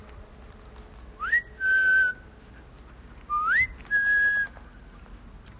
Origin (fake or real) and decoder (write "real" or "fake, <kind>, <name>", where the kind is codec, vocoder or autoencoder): real